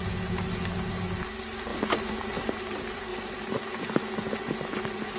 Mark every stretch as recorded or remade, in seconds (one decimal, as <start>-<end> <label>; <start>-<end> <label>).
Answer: 0.0-3.1 recorded; 3.1-4.5 remade; 4.5-5.2 recorded